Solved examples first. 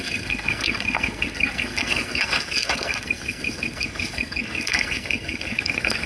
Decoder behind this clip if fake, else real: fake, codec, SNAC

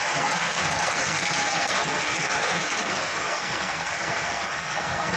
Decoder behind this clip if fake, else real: fake, codec, SNAC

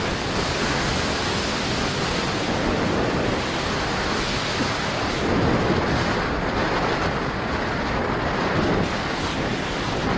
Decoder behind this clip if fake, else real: real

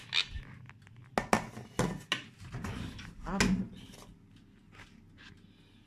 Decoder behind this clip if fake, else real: real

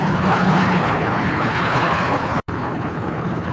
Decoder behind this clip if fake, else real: fake, codec, HILCodec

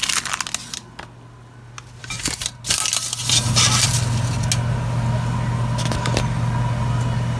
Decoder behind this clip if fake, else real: real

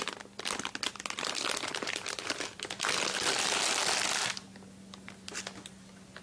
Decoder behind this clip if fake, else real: real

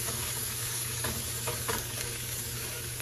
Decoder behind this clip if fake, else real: fake, codec, DAC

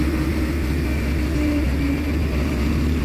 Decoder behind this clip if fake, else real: real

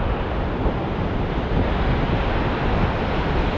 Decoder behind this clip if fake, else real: real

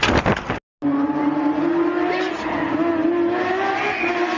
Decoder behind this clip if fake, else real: real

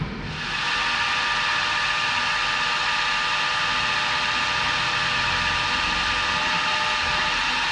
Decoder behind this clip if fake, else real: real